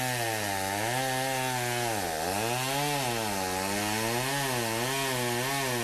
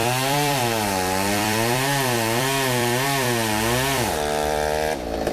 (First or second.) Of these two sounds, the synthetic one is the second